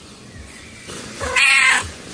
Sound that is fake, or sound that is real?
fake